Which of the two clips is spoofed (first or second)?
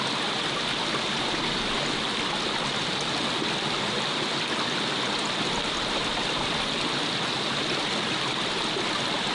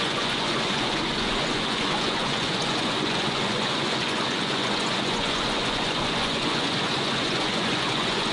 second